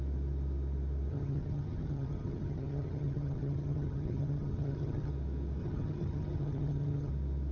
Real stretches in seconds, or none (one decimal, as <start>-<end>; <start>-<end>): 0.0-1.1; 5.1-5.6; 7.1-7.5